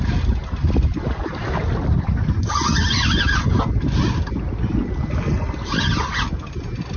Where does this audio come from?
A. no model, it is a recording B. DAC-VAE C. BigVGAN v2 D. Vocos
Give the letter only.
A